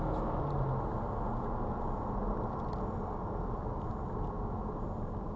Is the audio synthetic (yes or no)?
no